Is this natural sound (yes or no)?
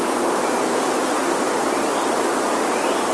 yes